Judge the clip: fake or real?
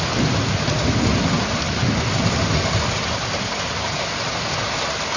real